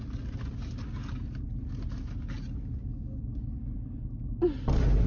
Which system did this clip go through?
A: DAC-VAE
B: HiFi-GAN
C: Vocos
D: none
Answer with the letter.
D